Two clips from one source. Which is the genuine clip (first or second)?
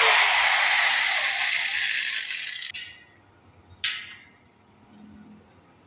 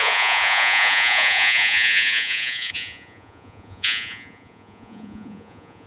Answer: first